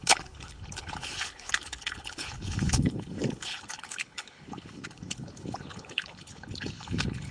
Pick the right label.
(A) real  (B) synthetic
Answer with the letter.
B